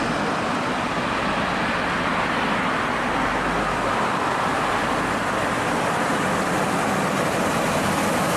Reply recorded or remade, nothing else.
recorded